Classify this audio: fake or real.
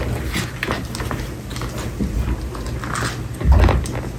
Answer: real